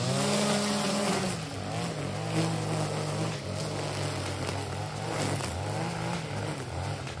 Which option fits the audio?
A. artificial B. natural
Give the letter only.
B